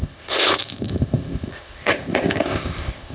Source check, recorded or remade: remade